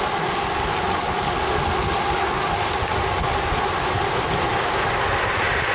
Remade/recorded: recorded